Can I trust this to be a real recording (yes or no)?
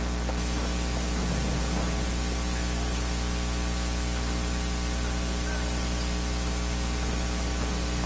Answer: yes